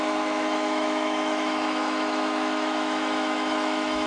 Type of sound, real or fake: fake